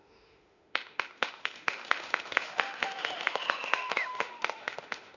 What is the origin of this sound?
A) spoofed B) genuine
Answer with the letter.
A